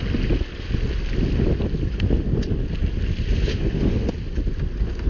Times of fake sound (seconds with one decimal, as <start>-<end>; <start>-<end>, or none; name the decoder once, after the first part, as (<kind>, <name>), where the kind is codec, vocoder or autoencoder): 3.5-4.1 (autoencoder, DAC-VAE)